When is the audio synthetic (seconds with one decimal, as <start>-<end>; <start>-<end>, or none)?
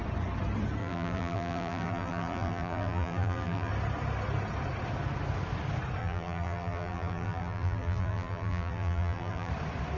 0.8-3.7; 6.0-9.5